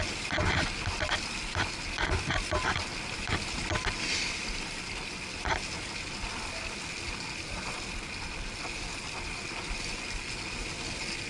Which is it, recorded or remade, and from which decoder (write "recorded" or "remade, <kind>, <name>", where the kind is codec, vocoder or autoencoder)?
recorded